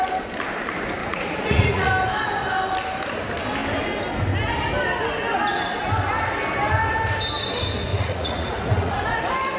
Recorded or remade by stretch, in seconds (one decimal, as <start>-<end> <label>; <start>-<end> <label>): 0.0-1.0 recorded; 1.0-1.9 remade; 1.9-7.9 recorded; 7.9-9.2 remade; 9.2-9.6 recorded